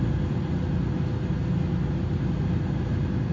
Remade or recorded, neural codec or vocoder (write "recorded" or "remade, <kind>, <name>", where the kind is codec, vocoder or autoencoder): recorded